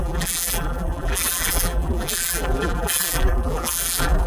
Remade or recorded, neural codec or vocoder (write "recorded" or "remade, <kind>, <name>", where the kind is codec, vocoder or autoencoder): remade, vocoder, BigVGAN v2